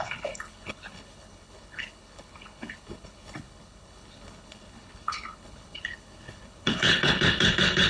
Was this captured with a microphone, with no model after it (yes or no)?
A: no